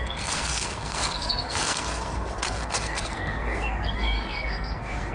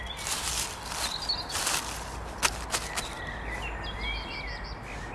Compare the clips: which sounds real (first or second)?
second